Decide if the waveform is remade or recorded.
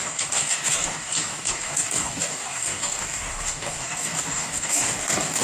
remade